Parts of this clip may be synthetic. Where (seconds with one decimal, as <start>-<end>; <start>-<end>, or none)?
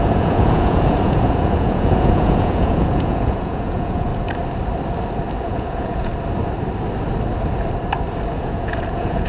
0.0-4.1; 5.4-6.1; 8.3-9.3